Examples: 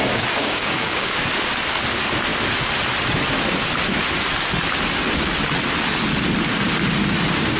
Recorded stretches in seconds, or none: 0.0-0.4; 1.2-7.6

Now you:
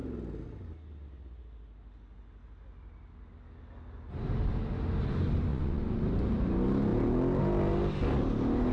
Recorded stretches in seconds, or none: 0.0-5.5; 6.0-8.7

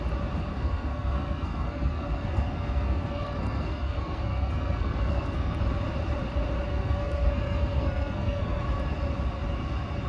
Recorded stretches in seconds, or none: 0.0-0.5; 5.6-6.7; 8.6-10.1

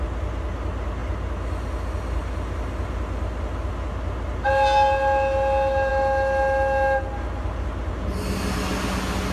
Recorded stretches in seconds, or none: 0.0-9.3

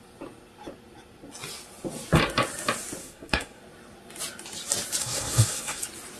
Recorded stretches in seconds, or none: 0.0-3.0; 3.6-5.0; 5.8-6.2

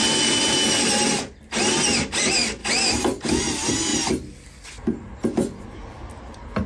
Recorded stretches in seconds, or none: 0.0-6.7

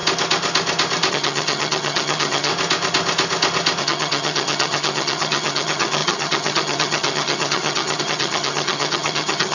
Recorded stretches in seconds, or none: 0.0-1.1; 2.5-3.8

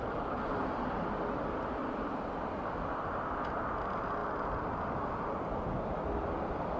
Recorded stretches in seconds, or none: 0.0-6.8